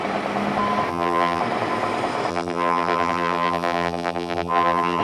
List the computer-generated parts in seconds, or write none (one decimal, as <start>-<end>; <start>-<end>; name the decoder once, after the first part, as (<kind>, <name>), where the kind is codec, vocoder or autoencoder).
0.9-1.4 (vocoder, BigVGAN v2); 2.3-5.0